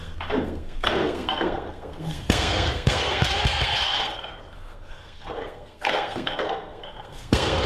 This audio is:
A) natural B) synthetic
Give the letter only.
B